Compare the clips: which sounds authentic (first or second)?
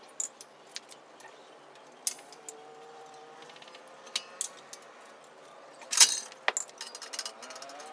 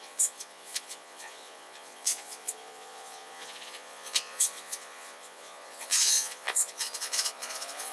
first